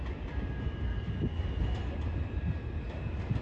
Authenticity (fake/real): real